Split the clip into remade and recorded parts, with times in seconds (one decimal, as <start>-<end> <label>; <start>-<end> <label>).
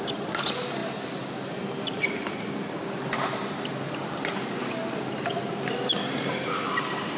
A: 0.0-7.2 recorded